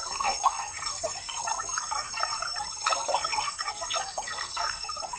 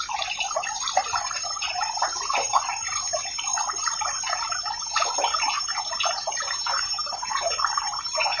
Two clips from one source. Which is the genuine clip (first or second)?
second